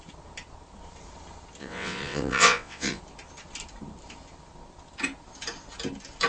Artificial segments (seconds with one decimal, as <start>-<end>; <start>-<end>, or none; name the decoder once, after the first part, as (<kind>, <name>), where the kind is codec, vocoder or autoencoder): 1.6-3.0 (vocoder, WaveNeXt)